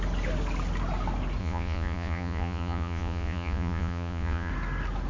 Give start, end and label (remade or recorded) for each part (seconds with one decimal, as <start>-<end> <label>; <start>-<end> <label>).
0.0-1.4 recorded; 1.4-4.5 remade; 4.5-5.1 recorded